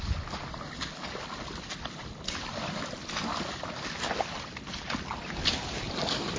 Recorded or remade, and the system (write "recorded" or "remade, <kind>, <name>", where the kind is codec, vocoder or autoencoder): recorded